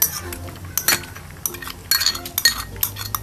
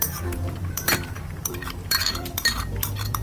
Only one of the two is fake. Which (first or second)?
second